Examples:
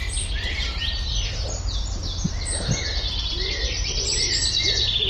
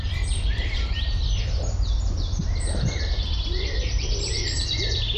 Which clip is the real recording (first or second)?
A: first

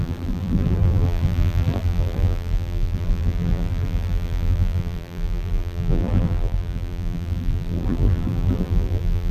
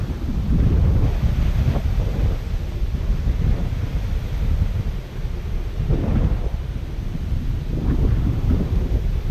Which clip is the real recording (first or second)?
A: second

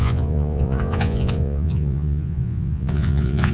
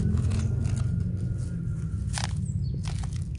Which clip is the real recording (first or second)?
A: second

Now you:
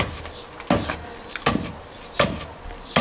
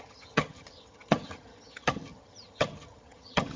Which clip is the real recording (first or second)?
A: first